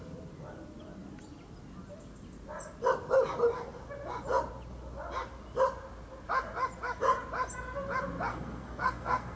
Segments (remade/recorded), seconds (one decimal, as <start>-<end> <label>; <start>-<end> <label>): 0.0-8.3 recorded; 8.3-9.4 remade